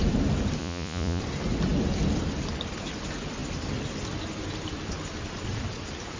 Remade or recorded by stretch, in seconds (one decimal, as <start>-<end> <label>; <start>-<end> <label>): 0.0-0.6 recorded; 0.6-1.2 remade; 1.2-6.2 recorded